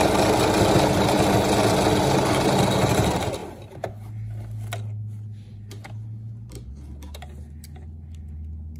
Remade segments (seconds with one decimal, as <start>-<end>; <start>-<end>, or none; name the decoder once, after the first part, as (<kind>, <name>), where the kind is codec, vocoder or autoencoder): none